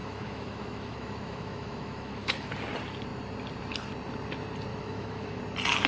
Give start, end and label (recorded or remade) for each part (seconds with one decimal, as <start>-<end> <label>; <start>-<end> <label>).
0.0-2.5 remade; 2.5-4.7 recorded; 4.7-5.4 remade; 5.4-5.9 recorded